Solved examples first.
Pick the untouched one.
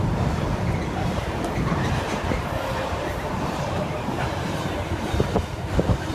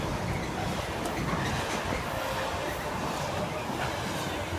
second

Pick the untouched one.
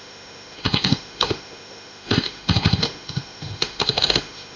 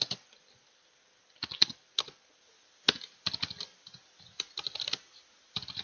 second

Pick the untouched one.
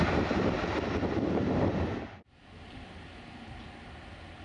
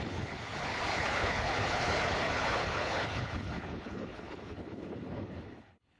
first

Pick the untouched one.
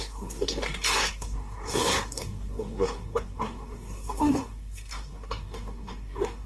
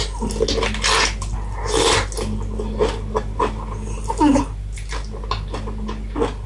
second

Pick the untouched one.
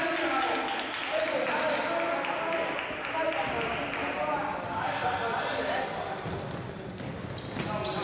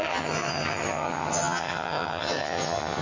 first